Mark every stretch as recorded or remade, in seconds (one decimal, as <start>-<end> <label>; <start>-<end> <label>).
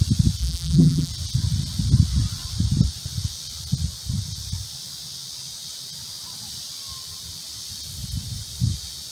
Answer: 0.0-0.4 recorded; 0.4-1.1 remade; 1.1-9.1 recorded